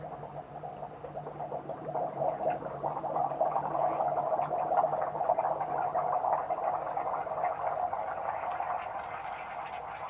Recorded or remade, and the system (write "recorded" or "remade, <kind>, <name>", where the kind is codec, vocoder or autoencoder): recorded